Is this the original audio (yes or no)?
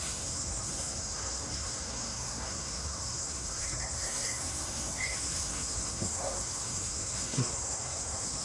no